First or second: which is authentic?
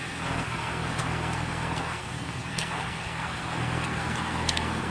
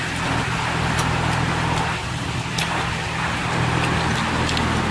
second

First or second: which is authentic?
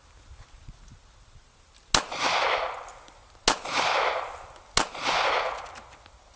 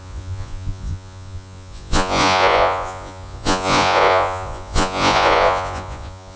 first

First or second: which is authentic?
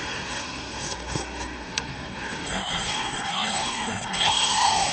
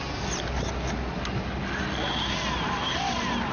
second